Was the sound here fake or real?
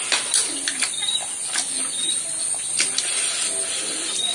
real